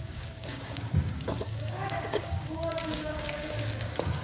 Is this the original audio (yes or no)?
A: no